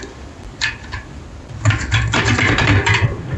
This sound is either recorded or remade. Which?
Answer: remade